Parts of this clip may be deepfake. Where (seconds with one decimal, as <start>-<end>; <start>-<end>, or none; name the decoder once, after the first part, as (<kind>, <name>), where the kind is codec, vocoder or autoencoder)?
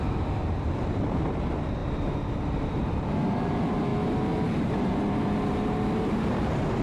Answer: 0.0-1.8 (vocoder, BigVGAN v2); 3.0-6.8